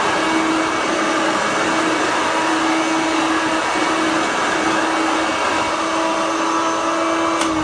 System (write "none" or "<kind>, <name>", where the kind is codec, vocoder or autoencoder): none